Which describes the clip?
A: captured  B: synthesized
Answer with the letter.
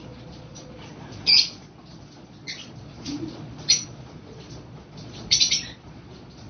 B